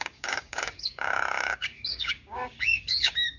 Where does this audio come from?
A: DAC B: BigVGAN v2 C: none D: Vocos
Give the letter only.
A